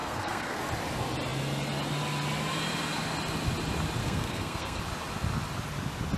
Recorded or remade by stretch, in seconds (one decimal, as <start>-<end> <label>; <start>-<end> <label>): 0.0-0.6 remade; 0.6-4.0 recorded; 4.0-4.8 remade; 4.8-6.2 recorded